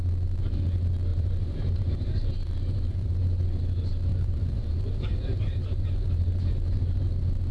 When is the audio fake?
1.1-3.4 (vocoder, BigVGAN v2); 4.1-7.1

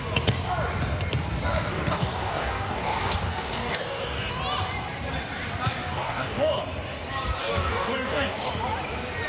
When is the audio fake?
1.7-4.3 (codec, DAC); 5.9-6.6; 7.4-8.5

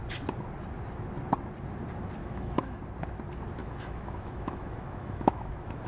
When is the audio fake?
2.2-2.8 (autoencoder, DAC-VAE); 3.6-5.9

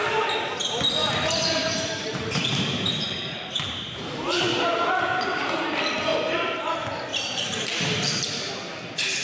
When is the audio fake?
1.0-5.2 (vocoder, BigVGAN v2); 6.1-6.6; 7.1-8.5

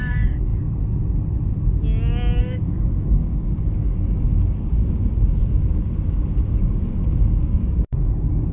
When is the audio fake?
0.0-0.5 (codec, DAC); 2.4-8.5

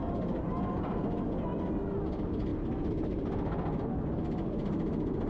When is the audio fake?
none